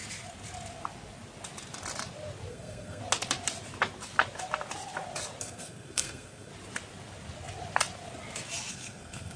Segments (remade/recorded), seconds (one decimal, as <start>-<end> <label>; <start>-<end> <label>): 0.0-2.5 recorded; 2.5-3.0 remade; 3.0-5.4 recorded; 5.4-6.5 remade; 6.5-8.7 recorded; 8.7-9.4 remade